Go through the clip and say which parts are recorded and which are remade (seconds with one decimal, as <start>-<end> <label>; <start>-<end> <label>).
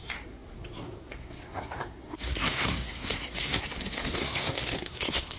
0.0-5.4 remade